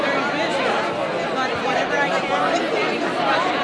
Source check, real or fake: real